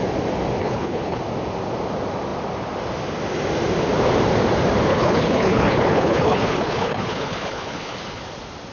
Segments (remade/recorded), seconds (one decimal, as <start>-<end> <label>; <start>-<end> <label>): 0.0-0.6 recorded; 0.6-1.2 remade; 1.2-4.9 recorded; 4.9-8.2 remade; 8.2-8.7 recorded

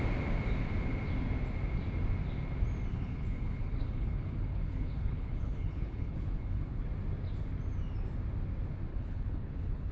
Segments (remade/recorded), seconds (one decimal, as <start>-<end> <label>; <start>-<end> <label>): 0.0-2.9 recorded; 2.9-6.8 remade; 6.8-8.9 recorded; 8.9-9.9 remade

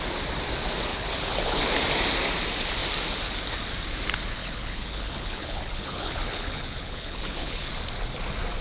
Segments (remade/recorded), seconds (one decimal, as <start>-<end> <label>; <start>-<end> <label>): 0.0-0.9 recorded; 0.9-1.6 remade; 1.6-4.4 recorded; 4.4-7.7 remade; 7.7-8.6 recorded

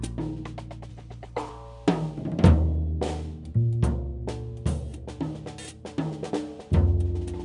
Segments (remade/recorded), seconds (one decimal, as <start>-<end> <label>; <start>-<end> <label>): 0.0-0.9 recorded; 0.9-1.5 remade; 1.5-7.4 recorded

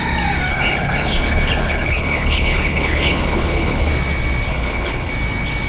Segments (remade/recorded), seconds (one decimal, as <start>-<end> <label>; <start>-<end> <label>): 0.0-0.5 recorded; 0.5-3.9 remade; 3.9-4.5 recorded; 4.5-5.1 remade; 5.1-5.7 recorded

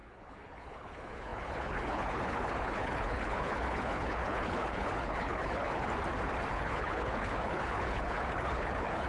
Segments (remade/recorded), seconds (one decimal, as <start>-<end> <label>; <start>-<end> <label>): 0.0-5.9 remade; 5.9-6.5 recorded; 6.5-9.1 remade

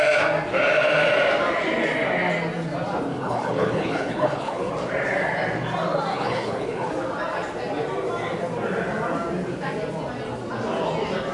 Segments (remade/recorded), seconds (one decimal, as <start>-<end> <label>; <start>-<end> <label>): 0.0-3.1 recorded; 3.1-4.7 remade; 4.7-6.1 recorded; 6.1-6.9 remade; 6.9-11.3 recorded